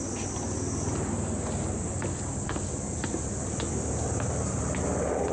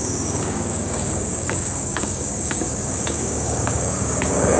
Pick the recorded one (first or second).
first